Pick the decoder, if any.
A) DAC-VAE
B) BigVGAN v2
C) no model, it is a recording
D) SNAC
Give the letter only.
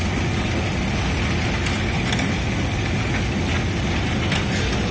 C